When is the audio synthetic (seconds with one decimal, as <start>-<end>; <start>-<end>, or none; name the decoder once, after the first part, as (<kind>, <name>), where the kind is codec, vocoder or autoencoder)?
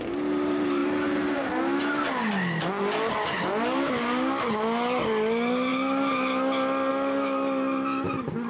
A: none